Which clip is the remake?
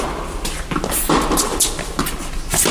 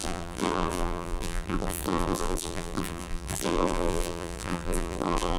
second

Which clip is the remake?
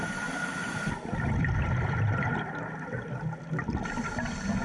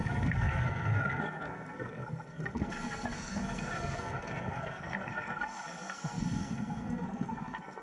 second